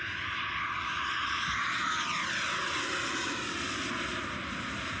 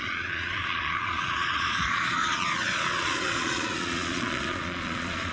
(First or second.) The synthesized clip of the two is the second